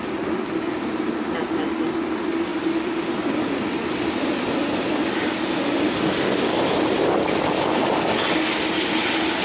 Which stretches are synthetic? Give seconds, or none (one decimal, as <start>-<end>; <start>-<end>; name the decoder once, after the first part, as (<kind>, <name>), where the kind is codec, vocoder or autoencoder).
2.5-3.0 (vocoder, BigVGAN v2)